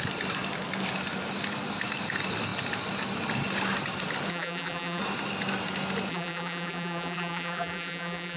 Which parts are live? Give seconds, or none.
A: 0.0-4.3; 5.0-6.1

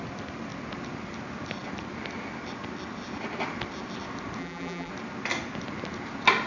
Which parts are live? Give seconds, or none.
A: 0.0-4.4; 4.9-6.5

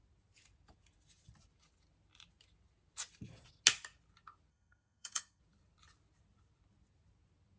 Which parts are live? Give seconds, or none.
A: 0.0-4.5; 5.4-7.6

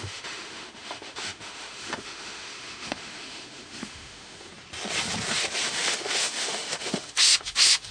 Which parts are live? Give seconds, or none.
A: 4.5-5.6